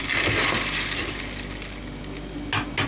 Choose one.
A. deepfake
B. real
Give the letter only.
B